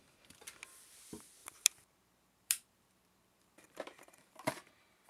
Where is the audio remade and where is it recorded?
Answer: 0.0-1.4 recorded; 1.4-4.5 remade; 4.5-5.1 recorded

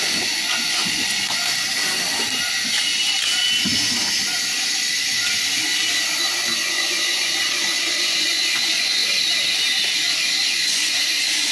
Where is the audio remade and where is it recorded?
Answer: 0.0-1.4 remade; 1.4-6.7 recorded; 6.7-9.0 remade; 9.0-10.5 recorded; 10.5-11.5 remade

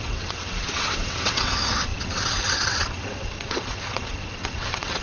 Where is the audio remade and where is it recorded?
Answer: 0.0-5.0 remade

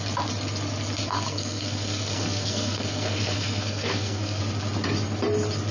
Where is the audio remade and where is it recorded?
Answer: 0.0-1.0 recorded; 1.0-4.4 remade; 4.4-5.7 recorded

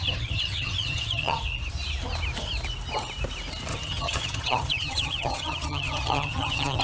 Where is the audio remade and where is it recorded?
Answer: 0.0-1.4 remade; 1.4-3.7 recorded; 3.7-6.8 remade

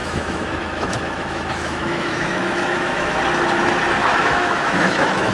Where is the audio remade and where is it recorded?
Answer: 0.0-3.2 remade; 3.2-4.0 recorded; 4.0-5.3 remade

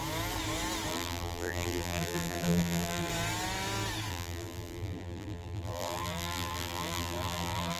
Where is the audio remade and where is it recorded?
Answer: 0.0-0.9 recorded; 0.9-3.1 remade; 3.1-4.1 recorded; 4.1-7.8 remade